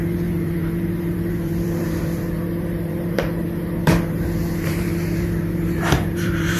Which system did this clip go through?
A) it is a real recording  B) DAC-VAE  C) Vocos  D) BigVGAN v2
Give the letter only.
D